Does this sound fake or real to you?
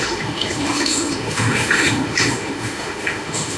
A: fake